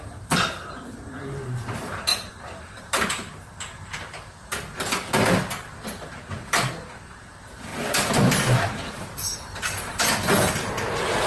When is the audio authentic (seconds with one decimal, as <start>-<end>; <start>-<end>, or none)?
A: 0.0-2.1; 3.4-7.7; 9.6-11.3